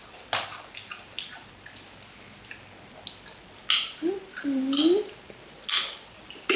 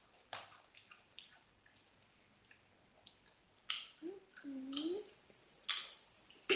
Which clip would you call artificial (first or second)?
second